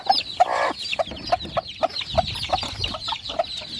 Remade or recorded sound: remade